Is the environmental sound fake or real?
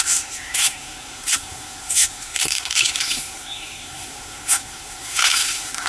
fake